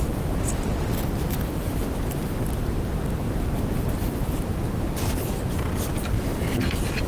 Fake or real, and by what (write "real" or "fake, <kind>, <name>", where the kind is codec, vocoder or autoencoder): real